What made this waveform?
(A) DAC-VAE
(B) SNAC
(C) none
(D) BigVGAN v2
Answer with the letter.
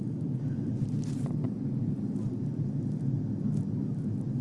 C